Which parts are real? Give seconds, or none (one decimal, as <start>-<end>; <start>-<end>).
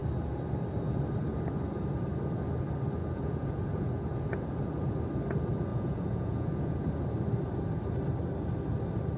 0.0-3.0; 4.6-5.7; 6.9-9.2